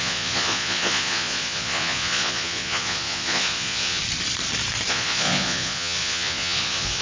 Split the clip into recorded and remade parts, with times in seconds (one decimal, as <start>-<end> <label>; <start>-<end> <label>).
0.0-4.0 remade; 4.0-4.9 recorded; 4.9-7.0 remade

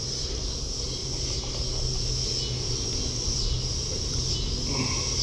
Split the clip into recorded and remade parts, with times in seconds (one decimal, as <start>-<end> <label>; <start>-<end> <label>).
0.0-5.2 recorded